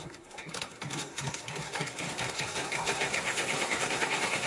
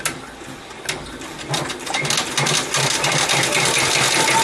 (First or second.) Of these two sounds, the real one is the second